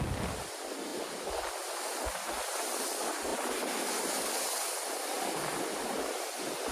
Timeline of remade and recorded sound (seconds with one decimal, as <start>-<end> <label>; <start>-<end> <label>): 0.0-3.3 recorded; 3.3-3.8 remade; 3.8-5.5 recorded; 5.5-6.7 remade